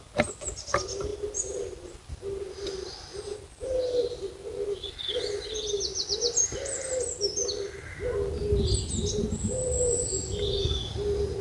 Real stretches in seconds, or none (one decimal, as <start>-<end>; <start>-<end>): 0.0-11.4